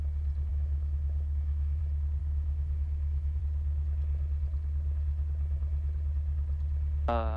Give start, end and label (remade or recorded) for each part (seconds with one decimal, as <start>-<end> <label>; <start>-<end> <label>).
0.0-0.5 recorded; 0.5-1.8 remade; 1.8-2.2 recorded; 2.2-3.4 remade; 3.4-7.4 recorded